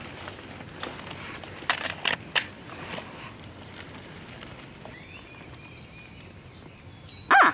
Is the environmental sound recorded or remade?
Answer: recorded